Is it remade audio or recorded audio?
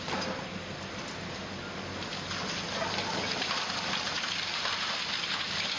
recorded